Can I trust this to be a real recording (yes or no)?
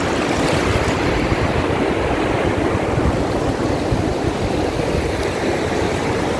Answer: yes